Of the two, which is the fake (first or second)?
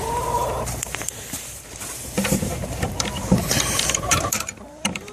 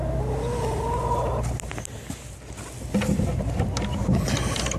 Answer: first